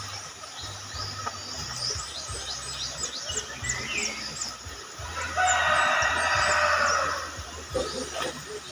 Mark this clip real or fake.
real